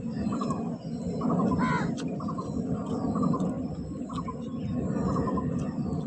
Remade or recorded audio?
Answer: recorded